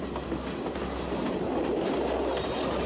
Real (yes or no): yes